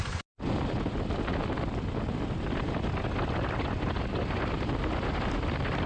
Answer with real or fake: real